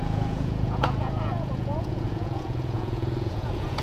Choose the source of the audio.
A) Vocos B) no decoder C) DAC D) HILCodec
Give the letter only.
A